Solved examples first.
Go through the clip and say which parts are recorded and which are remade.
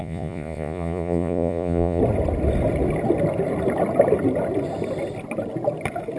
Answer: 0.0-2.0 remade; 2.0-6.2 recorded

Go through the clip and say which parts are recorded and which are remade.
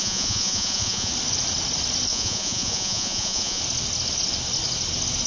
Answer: 0.0-1.1 remade; 1.1-2.1 recorded; 2.1-3.6 remade; 3.6-5.3 recorded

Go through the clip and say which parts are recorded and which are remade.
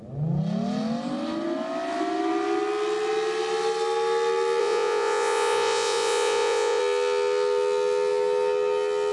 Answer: 0.0-4.6 recorded; 4.6-6.8 remade; 6.8-9.1 recorded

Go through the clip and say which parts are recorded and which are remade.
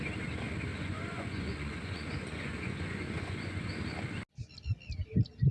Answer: 0.0-0.7 recorded; 0.7-3.7 remade; 3.7-5.5 recorded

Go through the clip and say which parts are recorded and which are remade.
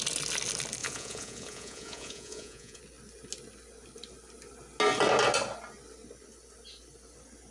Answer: 0.0-0.8 recorded; 0.8-2.8 remade; 2.8-7.5 recorded